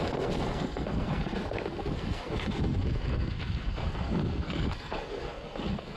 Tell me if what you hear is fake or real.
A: fake